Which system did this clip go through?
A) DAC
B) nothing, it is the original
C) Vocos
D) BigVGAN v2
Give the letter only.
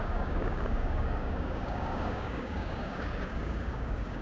A